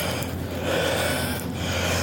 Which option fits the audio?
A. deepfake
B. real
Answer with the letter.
B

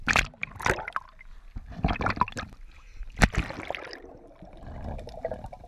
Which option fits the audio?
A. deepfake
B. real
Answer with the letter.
B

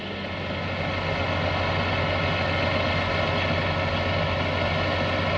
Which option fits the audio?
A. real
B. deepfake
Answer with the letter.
A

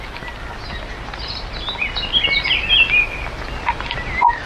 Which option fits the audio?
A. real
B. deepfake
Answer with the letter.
A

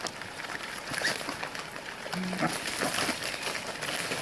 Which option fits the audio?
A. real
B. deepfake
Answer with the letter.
A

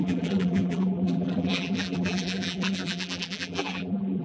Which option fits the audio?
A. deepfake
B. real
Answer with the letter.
A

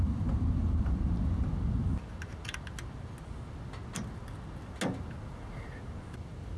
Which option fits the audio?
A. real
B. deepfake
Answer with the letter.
A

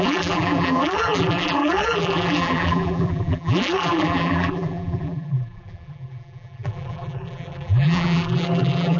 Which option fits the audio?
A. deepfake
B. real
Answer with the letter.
A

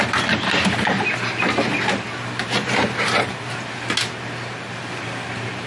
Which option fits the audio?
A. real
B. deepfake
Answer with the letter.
A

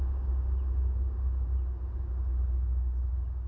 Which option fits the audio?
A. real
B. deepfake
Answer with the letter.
A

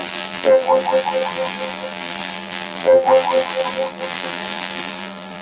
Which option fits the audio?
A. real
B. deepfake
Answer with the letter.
B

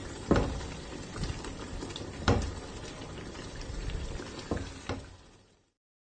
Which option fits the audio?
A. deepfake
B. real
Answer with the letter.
A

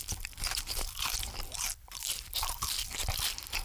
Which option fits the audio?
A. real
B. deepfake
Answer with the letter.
B